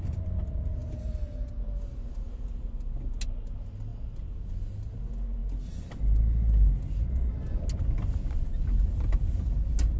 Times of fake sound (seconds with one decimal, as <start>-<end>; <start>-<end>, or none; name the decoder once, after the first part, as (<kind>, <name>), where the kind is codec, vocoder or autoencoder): 0.8-2.7 (vocoder, BigVGAN v2)